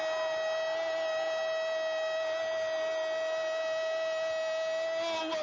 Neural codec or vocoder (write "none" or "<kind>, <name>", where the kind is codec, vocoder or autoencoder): none